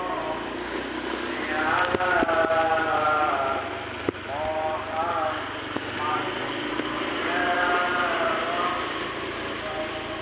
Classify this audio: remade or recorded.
recorded